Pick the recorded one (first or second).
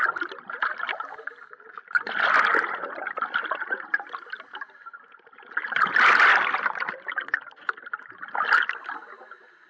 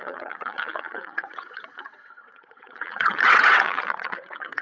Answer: first